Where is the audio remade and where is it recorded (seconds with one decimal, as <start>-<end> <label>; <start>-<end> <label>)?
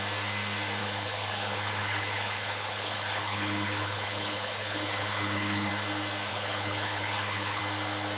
0.0-0.8 recorded; 0.8-5.7 remade; 5.7-6.3 recorded; 6.3-7.6 remade; 7.6-8.2 recorded